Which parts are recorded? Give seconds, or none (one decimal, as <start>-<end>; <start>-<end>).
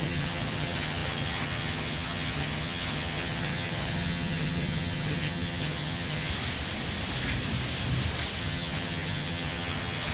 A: 6.3-8.4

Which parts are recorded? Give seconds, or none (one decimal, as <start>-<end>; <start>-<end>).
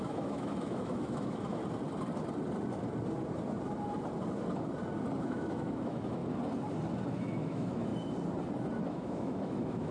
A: 1.6-5.2; 6.2-7.1; 7.9-8.8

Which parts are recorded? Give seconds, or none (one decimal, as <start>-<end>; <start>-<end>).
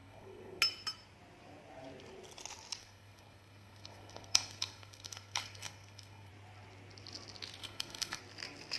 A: 0.6-2.8; 6.3-7.6; 8.2-8.8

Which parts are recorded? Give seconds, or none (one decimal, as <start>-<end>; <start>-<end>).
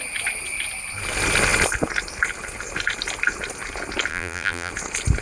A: 0.0-4.1; 4.7-5.2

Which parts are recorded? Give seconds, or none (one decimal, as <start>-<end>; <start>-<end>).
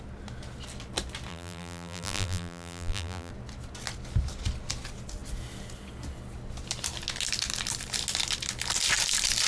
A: 0.0-1.3; 3.3-9.5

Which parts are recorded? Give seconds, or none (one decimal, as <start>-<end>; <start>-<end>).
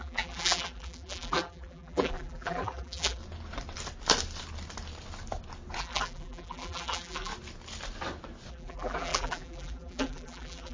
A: 3.2-5.8; 7.3-8.5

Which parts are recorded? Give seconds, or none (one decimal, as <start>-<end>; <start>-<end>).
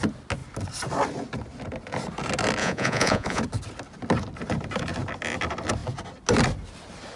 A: 0.0-2.6; 3.4-7.2